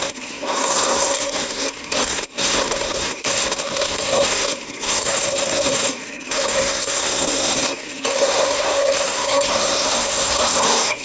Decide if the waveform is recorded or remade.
remade